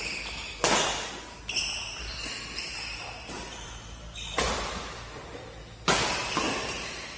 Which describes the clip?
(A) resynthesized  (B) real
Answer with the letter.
B